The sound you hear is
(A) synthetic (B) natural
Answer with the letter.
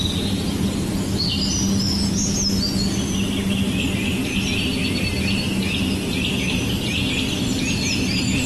B